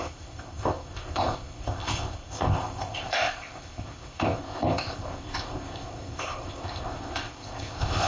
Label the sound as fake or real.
fake